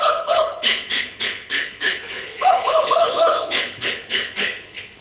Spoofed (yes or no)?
yes